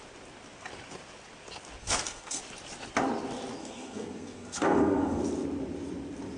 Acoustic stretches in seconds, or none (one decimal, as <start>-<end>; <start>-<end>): 0.0-1.8; 2.4-3.6; 5.2-6.4